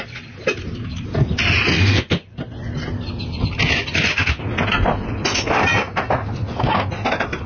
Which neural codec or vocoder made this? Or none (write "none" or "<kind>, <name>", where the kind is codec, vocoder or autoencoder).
none